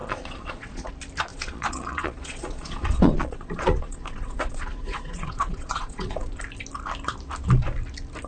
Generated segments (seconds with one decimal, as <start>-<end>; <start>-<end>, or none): 0.0-0.9; 1.3-6.3